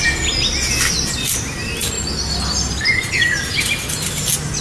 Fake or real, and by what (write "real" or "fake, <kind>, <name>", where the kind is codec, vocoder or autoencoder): real